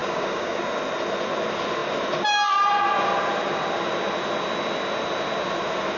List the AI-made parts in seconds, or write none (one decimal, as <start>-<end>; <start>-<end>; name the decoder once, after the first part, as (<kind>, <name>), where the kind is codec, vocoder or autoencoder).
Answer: 0.0-0.6 (codec, DAC)